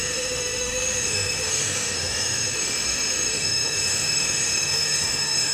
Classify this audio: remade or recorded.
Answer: remade